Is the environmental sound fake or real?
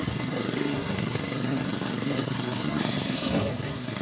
fake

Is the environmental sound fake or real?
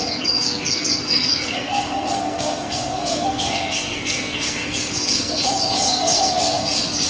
fake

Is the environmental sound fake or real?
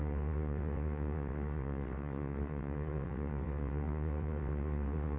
fake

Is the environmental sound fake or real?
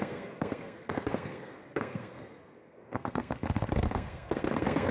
fake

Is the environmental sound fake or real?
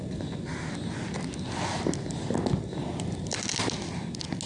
real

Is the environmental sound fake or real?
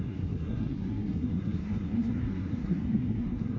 fake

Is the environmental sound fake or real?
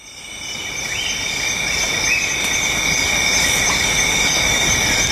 real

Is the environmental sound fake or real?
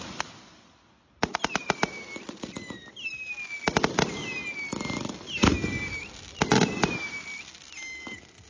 real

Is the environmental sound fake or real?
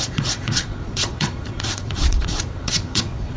fake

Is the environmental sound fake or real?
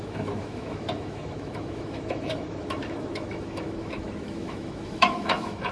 fake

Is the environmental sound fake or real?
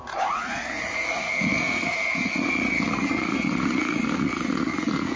fake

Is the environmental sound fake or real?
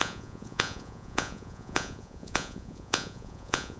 fake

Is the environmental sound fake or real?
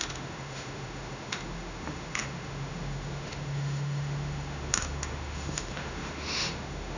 fake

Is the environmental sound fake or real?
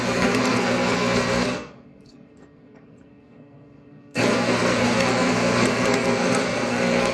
fake